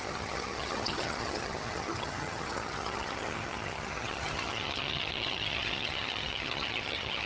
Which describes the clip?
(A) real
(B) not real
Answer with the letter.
B